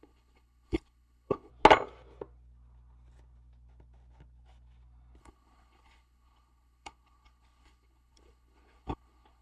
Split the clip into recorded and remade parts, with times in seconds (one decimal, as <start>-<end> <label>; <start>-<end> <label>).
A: 0.0-1.5 remade; 1.5-5.2 recorded; 5.2-9.4 remade